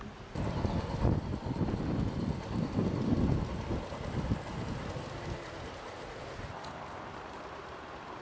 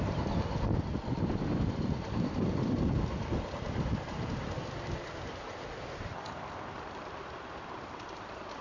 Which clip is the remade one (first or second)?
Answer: second